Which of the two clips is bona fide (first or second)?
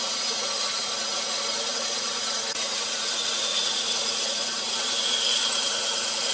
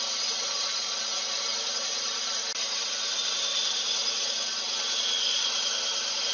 second